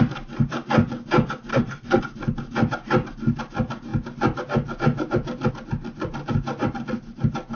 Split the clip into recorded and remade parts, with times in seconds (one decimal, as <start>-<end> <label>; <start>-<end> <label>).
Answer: 0.0-1.5 recorded; 1.5-2.0 remade; 2.0-7.5 recorded